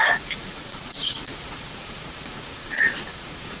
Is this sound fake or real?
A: fake